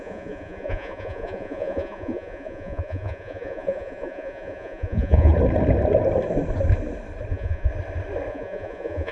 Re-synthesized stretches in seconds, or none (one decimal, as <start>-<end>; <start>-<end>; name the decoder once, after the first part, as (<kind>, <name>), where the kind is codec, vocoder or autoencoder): 0.0-5.3 (vocoder, Vocos); 7.3-7.7; 8.3-9.1